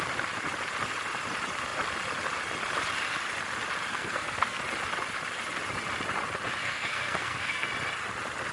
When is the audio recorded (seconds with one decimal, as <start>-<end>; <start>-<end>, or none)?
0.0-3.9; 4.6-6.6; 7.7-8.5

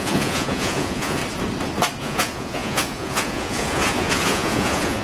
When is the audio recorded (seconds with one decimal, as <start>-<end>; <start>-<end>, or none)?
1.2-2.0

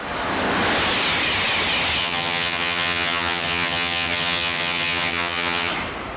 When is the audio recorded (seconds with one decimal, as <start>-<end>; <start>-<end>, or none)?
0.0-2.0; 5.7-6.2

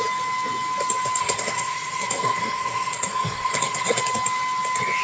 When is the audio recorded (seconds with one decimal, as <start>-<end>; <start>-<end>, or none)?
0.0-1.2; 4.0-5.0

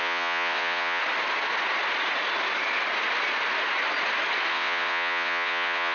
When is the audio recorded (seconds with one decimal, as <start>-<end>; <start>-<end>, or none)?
1.0-4.5